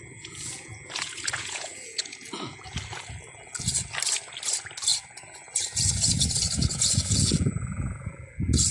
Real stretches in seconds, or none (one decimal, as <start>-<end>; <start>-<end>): 2.6-6.7; 8.1-8.7